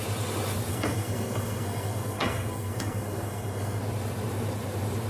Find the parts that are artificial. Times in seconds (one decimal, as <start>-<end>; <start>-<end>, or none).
0.7-3.8